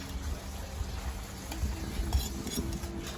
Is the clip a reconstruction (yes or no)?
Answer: no